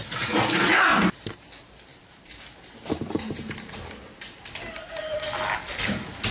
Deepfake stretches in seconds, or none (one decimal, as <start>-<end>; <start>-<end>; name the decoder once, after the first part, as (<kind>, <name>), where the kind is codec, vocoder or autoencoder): 1.9-4.5 (vocoder, BigVGAN v2)